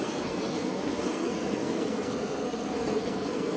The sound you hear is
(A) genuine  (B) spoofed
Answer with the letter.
B